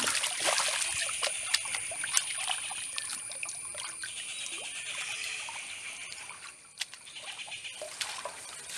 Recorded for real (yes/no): yes